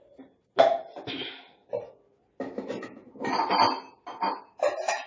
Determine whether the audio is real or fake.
real